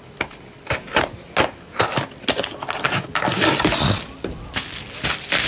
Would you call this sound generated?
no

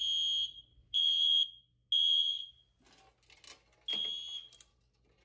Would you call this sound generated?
no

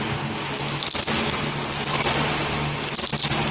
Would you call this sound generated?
no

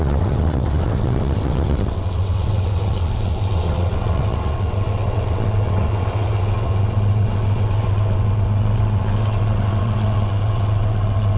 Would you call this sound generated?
yes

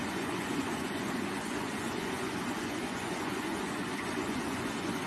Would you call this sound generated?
yes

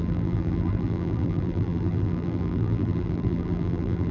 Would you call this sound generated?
yes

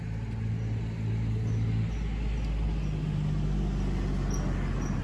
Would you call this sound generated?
no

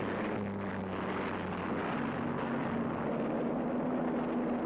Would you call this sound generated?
no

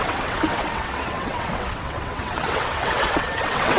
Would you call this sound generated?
yes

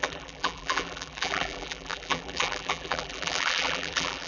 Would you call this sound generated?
yes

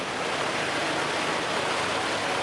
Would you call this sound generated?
no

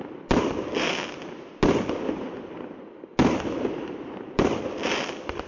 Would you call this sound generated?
no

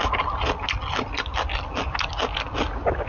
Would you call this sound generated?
no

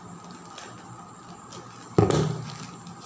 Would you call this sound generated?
no